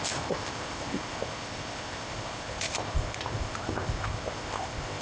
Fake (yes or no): yes